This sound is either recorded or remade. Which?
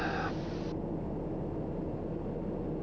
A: recorded